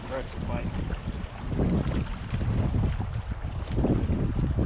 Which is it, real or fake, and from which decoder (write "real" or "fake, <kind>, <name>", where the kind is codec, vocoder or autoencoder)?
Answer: real